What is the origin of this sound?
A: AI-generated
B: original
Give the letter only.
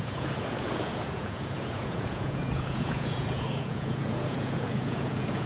A